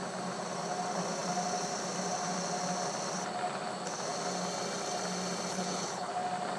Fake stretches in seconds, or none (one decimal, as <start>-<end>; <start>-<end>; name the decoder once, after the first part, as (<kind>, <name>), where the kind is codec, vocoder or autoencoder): 5.5-6.1 (codec, HILCodec)